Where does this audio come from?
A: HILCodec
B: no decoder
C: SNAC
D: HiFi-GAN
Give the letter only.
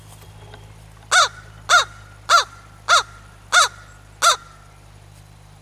B